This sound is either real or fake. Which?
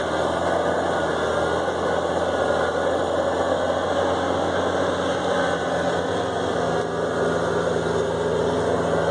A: real